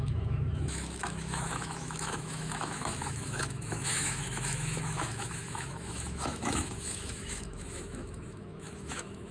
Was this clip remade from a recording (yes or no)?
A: yes